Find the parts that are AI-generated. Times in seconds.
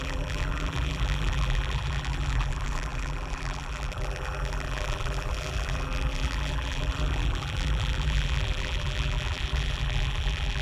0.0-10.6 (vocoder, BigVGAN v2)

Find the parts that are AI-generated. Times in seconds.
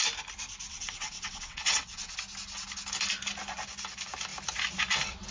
0.7-2.1 (vocoder, WaveNeXt)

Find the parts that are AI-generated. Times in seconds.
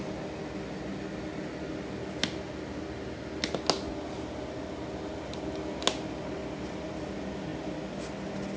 none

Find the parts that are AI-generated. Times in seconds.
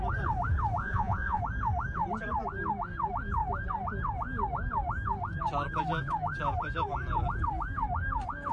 0.8-1.4 (vocoder, Vocos)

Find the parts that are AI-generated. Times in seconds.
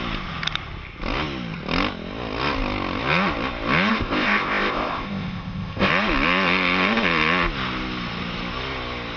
3.9-5.9 (codec, ZipCodec)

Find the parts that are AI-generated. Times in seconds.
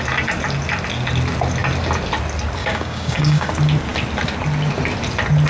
2.6-3.5 (codec, DAC)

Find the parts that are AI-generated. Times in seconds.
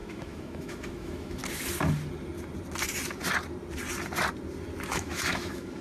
0.0-1.4 (autoencoder, DAC-VAE); 4.9-5.8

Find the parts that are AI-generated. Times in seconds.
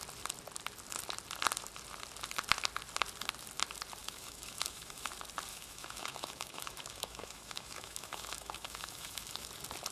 4.0-5.1 (autoencoder, DAC-VAE); 5.5-9.5